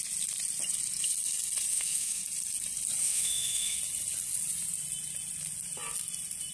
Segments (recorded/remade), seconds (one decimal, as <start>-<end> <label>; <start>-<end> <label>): 0.0-1.7 recorded; 1.7-2.2 remade; 2.2-3.0 recorded; 3.0-3.8 remade; 3.8-6.5 recorded